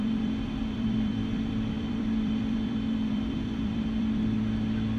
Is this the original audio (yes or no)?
no